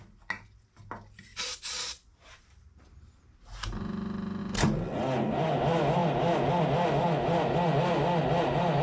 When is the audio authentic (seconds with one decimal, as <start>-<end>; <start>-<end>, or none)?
0.0-1.3; 4.4-8.8